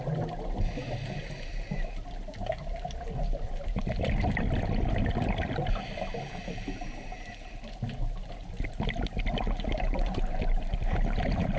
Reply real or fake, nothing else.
real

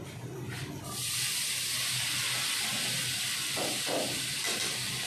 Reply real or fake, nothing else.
real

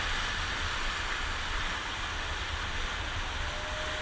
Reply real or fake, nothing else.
real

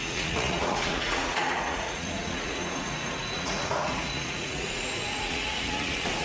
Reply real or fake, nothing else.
fake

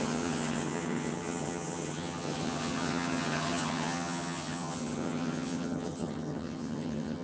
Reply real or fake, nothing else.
fake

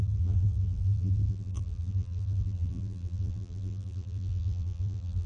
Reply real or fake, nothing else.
fake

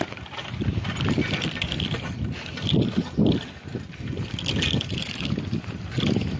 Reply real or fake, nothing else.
real